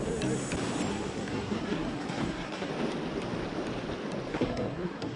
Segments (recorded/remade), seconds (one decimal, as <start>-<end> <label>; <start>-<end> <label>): 0.0-0.9 recorded; 0.9-2.7 remade; 2.7-4.3 recorded; 4.3-5.2 remade